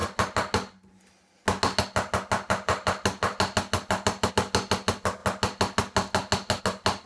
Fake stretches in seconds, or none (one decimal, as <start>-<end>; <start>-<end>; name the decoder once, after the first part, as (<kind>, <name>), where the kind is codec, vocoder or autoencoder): none